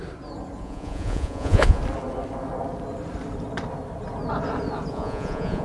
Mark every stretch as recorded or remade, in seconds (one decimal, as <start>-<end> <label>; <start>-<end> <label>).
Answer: 0.0-0.6 recorded; 0.6-1.8 remade; 1.8-4.9 recorded; 4.9-5.6 remade